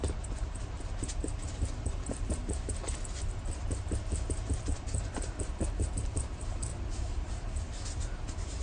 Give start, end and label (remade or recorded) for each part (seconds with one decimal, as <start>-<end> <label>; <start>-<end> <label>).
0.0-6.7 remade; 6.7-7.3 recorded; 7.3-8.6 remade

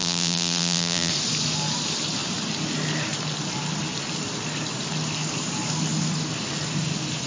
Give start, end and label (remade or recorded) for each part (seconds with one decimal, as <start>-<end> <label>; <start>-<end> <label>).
0.0-1.1 remade; 1.1-7.3 recorded

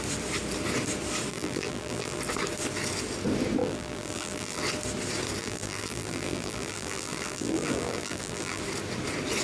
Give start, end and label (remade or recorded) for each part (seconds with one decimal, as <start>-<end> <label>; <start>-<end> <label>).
0.0-1.3 recorded; 1.3-2.2 remade; 2.2-3.6 recorded; 3.6-4.6 remade; 4.6-5.4 recorded; 5.4-8.6 remade; 8.6-9.4 recorded

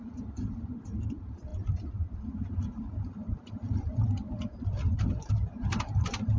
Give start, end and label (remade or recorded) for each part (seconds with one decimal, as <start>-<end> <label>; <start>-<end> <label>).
0.0-6.4 remade